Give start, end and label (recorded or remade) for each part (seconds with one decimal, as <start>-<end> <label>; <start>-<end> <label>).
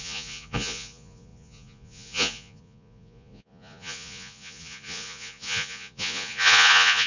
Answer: 0.0-7.1 remade